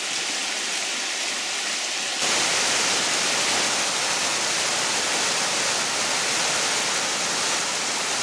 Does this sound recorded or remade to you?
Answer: recorded